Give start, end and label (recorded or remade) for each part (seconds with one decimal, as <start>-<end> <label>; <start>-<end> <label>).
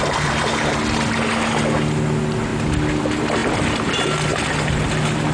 0.0-5.3 recorded